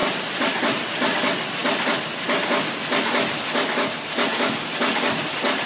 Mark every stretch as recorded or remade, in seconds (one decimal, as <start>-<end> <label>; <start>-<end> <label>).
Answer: 0.0-5.7 recorded